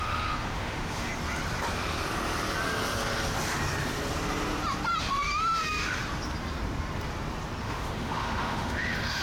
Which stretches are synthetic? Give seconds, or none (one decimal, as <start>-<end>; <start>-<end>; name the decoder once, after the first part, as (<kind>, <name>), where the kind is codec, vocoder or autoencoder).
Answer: 0.0-1.1 (autoencoder, DAC-VAE); 5.0-6.0; 7.6-9.2